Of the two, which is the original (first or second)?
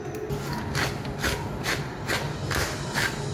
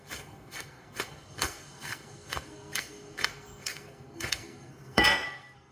first